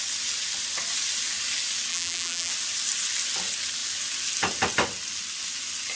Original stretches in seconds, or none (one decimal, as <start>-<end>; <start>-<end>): 0.0-1.9; 2.5-6.0